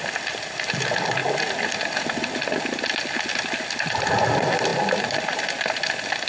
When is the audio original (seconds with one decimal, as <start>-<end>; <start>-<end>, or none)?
0.0-6.3